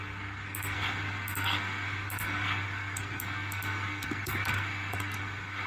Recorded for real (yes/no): no